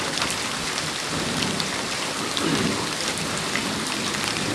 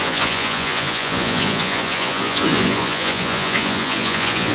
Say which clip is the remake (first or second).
second